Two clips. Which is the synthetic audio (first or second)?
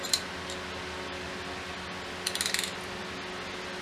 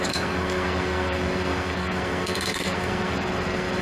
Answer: second